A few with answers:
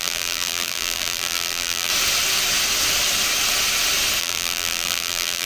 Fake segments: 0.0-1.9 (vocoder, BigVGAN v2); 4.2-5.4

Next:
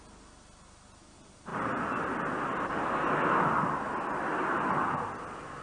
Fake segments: none